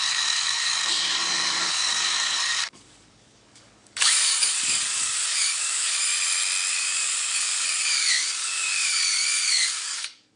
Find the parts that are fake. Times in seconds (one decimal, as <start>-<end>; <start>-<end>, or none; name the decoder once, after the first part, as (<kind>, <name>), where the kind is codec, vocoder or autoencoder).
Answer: 0.0-6.1 (codec, DAC); 6.7-10.4

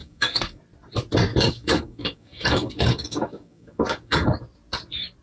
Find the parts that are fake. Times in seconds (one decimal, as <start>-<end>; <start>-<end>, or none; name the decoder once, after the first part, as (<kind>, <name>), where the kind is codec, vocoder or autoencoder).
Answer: 0.0-0.6 (codec, DAC); 1.3-4.4

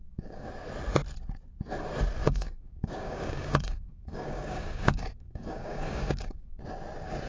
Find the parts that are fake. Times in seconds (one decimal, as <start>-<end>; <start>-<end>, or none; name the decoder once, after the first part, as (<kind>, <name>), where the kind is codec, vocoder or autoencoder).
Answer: 0.0-0.5 (codec, DAC); 2.2-6.6

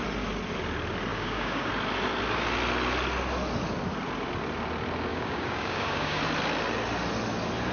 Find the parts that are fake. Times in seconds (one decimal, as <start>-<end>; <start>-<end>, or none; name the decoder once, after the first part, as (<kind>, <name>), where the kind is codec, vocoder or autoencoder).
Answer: 1.1-1.7 (codec, DAC); 5.1-6.2

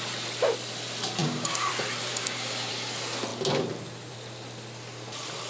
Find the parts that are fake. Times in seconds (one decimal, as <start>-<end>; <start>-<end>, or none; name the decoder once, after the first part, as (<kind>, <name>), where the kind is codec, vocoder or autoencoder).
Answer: 1.2-1.7 (codec, DAC); 2.1-2.7

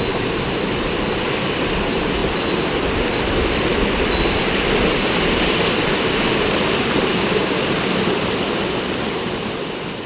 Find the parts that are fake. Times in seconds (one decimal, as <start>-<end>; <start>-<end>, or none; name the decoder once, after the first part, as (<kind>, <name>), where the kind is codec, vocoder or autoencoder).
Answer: 7.1-7.6 (codec, DAC)

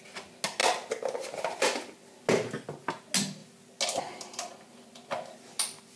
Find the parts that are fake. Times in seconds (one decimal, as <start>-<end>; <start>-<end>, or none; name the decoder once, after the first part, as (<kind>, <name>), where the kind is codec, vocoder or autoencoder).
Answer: none